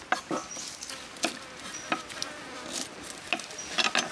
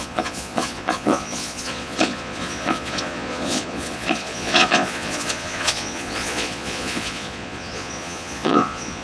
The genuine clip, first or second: first